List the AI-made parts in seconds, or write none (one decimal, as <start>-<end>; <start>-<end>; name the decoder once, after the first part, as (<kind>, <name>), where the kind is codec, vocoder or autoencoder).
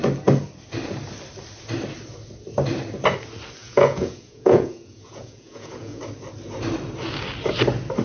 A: 3.6-6.0 (vocoder, Vocos)